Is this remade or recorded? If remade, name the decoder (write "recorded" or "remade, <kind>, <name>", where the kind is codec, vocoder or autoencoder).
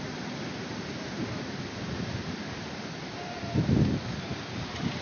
remade, vocoder, BigVGAN v2